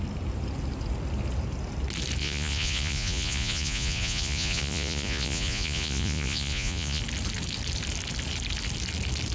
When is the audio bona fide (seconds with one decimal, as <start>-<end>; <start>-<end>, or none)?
0.0-2.2; 7.0-9.3